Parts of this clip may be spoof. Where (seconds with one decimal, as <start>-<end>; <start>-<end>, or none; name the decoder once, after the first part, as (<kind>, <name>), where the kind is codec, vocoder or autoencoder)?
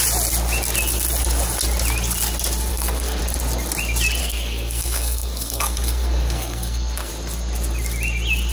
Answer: 2.7-3.2 (codec, SNAC); 4.2-7.1